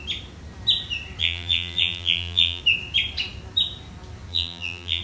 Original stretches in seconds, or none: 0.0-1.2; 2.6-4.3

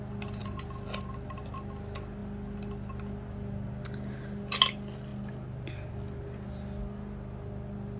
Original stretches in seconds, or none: 0.0-8.0

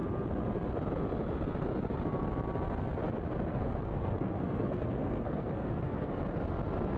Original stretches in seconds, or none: 0.0-3.5; 6.1-7.0